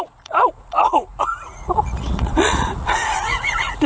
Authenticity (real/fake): fake